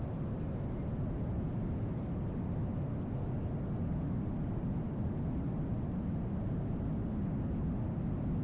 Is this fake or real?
real